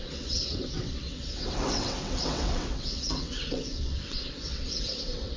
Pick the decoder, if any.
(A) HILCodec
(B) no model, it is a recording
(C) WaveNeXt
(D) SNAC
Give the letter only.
C